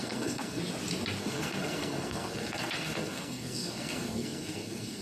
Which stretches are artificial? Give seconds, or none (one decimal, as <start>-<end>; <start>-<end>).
0.0-0.6; 1.2-5.0